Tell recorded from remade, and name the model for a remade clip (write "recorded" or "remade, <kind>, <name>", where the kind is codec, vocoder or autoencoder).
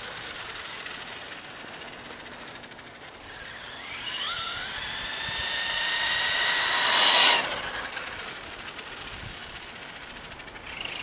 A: recorded